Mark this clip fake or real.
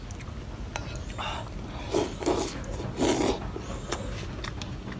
real